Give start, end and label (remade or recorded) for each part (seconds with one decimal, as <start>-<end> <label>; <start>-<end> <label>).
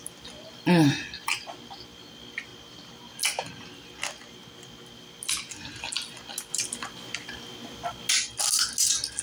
0.0-9.2 recorded